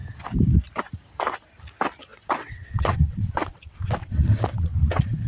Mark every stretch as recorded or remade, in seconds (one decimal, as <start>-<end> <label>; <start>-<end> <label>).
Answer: 0.0-2.1 recorded; 2.1-5.3 remade